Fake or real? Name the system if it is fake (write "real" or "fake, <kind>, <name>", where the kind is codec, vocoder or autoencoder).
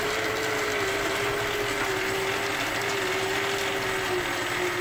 real